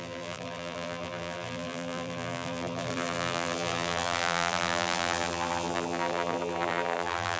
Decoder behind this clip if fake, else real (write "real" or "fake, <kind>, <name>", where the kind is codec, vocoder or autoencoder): fake, vocoder, BigVGAN v2